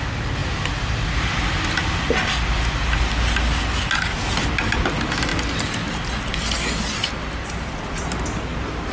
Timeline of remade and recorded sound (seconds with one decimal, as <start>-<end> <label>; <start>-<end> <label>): 0.0-8.9 recorded